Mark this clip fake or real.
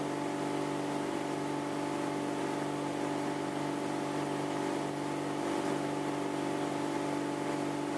real